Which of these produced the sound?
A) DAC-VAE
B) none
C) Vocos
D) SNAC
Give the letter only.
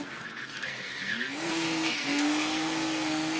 D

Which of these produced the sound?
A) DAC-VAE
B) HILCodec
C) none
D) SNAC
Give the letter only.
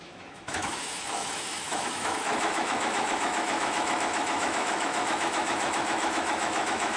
A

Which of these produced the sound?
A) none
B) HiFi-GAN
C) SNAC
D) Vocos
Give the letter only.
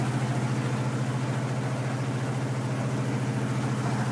A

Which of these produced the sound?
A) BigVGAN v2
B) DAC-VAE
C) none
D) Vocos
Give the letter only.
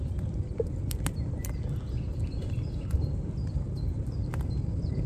A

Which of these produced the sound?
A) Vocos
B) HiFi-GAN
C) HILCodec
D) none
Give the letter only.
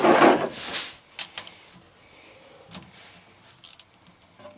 D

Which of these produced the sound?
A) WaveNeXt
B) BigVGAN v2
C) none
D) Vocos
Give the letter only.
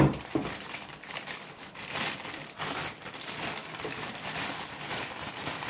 B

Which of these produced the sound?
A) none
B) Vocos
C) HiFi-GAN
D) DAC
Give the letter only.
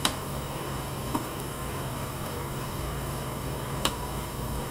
D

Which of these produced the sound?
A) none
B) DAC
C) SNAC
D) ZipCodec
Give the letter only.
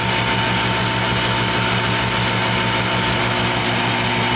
A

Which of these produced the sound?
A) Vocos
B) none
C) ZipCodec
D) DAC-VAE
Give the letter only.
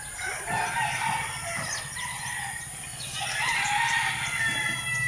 B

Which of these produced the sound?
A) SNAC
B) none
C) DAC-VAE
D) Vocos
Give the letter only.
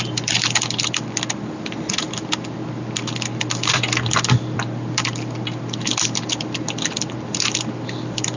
B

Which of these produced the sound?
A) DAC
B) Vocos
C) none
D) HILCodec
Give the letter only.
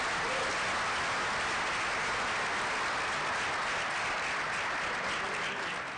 C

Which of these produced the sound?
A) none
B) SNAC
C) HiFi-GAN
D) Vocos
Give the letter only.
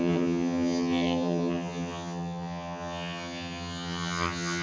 C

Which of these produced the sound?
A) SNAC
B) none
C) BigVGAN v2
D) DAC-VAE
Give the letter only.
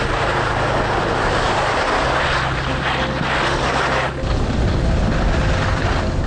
B